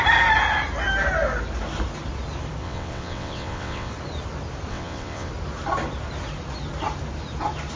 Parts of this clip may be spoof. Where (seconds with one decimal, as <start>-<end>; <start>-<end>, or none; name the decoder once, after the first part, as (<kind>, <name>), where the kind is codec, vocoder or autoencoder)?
2.6-3.9 (vocoder, WaveNeXt); 4.7-5.3